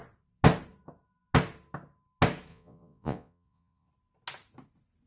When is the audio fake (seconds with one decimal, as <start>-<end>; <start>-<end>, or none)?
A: 2.5-3.9